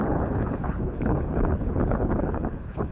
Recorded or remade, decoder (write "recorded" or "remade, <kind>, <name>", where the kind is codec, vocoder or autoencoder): remade, codec, HILCodec